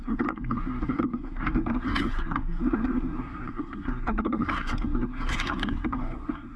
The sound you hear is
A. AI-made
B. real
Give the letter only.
A